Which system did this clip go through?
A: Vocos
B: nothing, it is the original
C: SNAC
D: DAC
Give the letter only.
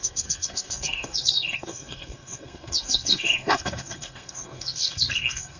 C